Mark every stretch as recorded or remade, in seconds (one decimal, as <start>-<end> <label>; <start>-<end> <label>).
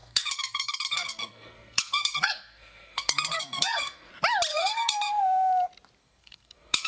0.0-4.1 remade; 4.1-4.5 recorded; 4.5-5.2 remade; 5.2-6.0 recorded; 6.0-6.9 remade